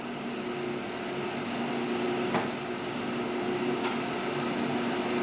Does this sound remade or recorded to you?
recorded